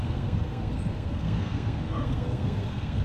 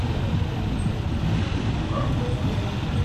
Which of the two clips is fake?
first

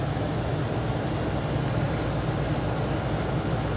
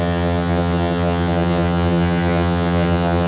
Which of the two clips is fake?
second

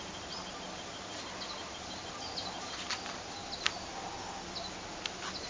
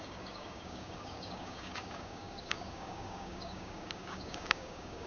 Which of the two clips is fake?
second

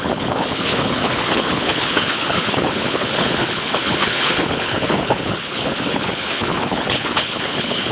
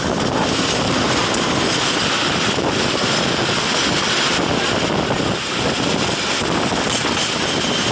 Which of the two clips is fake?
first